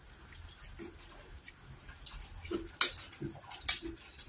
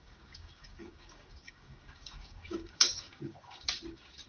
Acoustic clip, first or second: first